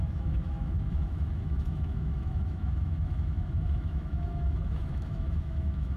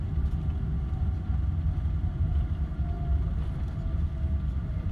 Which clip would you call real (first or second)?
second